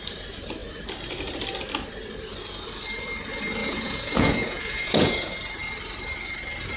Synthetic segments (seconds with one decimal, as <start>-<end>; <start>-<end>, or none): 3.6-5.3